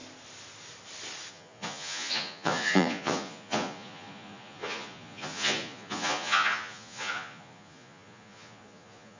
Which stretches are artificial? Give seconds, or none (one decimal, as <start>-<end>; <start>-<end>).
1.3-9.2